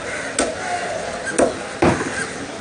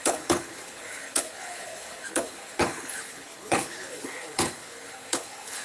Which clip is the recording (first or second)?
first